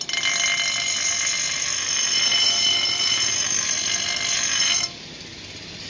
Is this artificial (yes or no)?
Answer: no